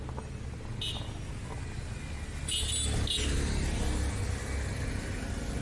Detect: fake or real real